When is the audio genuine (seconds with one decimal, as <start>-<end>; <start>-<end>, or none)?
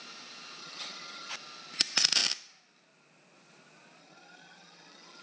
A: 0.0-0.6; 1.3-4.0